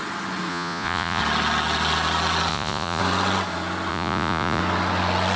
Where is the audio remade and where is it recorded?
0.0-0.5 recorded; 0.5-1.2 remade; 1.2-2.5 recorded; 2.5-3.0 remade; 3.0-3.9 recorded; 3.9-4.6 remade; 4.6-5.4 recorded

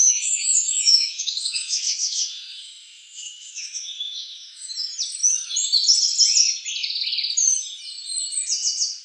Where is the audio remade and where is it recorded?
0.0-4.7 remade; 4.7-9.0 recorded

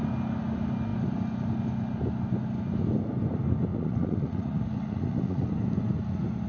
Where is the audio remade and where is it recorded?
0.0-3.7 recorded; 3.7-5.5 remade; 5.5-6.5 recorded